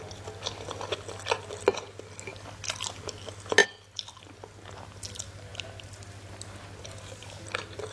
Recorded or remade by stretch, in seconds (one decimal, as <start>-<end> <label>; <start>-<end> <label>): 0.0-2.3 recorded; 2.3-2.8 remade; 2.8-3.6 recorded; 3.6-4.2 remade; 4.2-5.5 recorded; 5.5-7.2 remade; 7.2-7.9 recorded